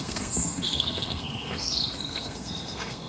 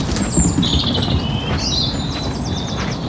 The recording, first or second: second